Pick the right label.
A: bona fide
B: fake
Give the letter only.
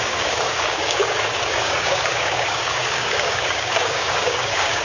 B